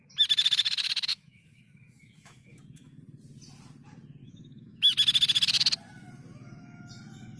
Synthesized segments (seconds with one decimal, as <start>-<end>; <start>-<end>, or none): 1.1-3.0; 4.2-4.9